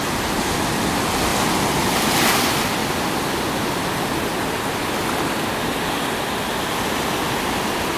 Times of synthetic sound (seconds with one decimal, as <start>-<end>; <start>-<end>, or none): none